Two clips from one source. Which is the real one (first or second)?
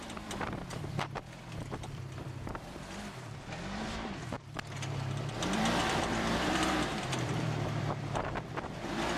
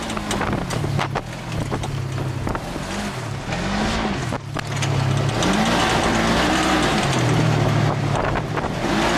second